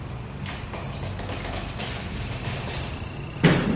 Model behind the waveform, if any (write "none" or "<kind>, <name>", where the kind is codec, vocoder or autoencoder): none